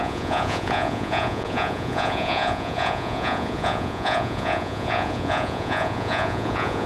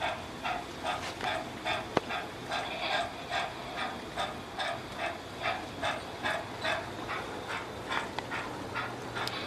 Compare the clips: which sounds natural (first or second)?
second